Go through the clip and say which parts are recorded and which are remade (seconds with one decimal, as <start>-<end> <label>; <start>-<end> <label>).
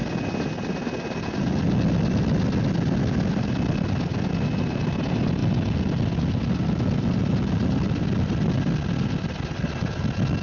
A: 0.0-10.4 recorded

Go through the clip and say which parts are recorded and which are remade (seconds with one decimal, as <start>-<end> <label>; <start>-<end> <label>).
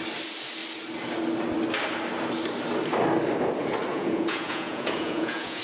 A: 0.0-3.9 recorded; 3.9-5.6 remade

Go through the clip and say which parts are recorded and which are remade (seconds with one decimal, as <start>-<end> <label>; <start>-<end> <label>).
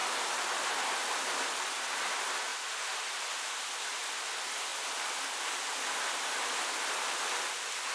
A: 0.0-7.9 recorded